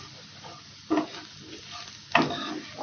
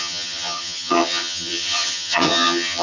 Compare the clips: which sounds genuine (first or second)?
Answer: first